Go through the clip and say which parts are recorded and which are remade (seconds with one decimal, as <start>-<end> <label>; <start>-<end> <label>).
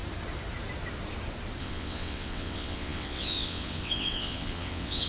0.0-1.6 recorded; 1.6-5.1 remade